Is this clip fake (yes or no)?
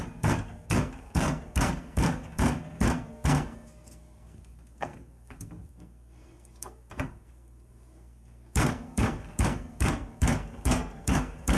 yes